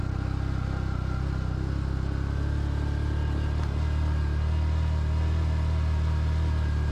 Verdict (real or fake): real